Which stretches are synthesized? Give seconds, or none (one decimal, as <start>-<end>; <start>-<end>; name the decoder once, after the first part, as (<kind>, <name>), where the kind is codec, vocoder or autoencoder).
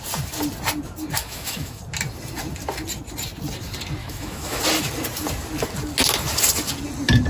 1.2-1.8 (autoencoder, DAC-VAE); 4.0-4.6